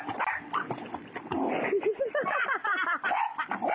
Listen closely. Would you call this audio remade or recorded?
recorded